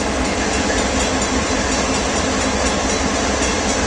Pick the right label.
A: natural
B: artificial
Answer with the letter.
A